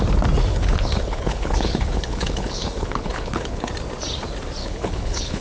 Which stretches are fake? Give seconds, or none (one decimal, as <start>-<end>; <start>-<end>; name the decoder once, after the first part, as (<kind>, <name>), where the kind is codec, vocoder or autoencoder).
0.5-3.7 (codec, HILCodec); 4.6-5.4